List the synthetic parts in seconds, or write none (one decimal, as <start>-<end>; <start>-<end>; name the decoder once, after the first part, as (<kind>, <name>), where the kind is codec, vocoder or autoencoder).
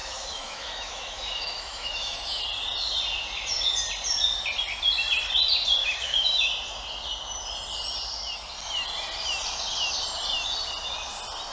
0.0-2.4 (autoencoder, DAC-VAE); 5.8-6.4